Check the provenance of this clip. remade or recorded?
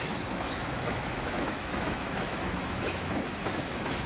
remade